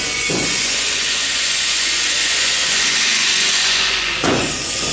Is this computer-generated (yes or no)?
yes